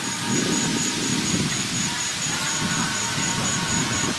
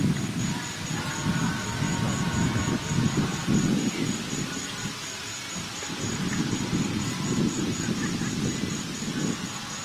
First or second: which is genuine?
second